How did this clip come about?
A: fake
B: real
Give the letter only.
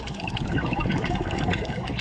A